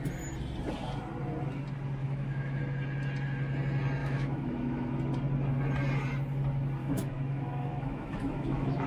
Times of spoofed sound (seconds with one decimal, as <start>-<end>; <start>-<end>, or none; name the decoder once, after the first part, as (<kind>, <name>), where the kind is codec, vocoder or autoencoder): 2.0-2.6 (autoencoder, DAC-VAE); 4.0-5.0; 6.8-8.9